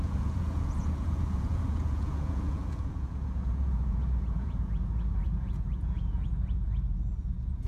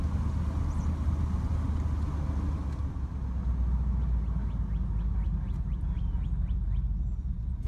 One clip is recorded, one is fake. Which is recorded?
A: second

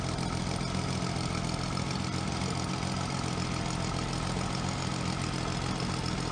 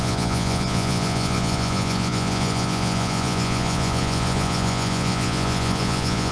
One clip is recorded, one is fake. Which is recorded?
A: first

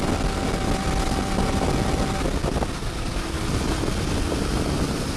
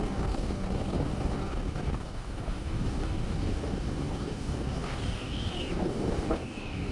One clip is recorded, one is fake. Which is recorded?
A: first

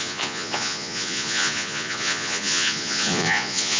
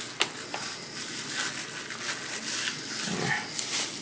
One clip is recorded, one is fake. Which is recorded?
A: second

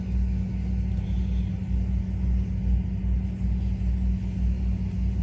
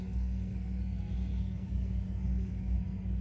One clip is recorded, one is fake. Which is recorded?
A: first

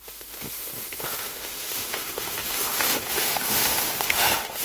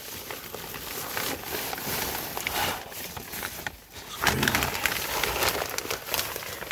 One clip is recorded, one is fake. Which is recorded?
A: second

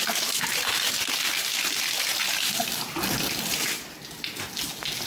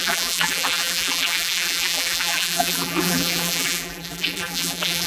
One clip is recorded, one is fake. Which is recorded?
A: first